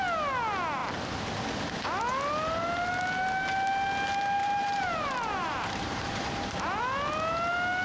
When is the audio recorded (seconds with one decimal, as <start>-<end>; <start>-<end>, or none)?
0.0-4.4; 6.8-7.8